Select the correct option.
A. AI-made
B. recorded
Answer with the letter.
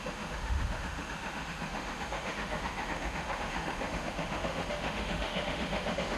A